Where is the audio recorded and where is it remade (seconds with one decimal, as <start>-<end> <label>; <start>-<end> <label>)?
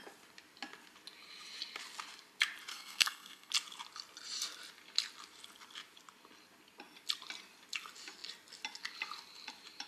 0.0-2.7 recorded; 2.7-3.5 remade; 3.5-9.9 recorded